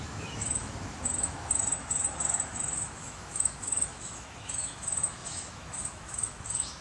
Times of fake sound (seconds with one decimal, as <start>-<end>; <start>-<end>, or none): 0.0-6.8